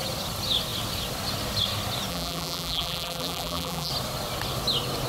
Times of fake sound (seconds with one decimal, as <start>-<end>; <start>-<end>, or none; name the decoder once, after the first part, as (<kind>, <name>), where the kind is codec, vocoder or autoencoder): 2.1-3.9 (vocoder, BigVGAN v2)